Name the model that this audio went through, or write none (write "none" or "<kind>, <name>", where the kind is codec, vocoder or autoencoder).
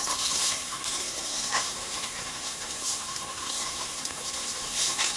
codec, SNAC